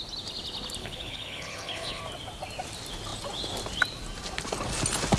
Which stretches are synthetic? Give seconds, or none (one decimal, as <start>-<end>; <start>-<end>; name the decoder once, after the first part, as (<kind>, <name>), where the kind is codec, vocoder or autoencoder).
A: 0.8-2.0 (codec, HILCodec)